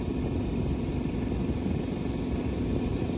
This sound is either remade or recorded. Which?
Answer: recorded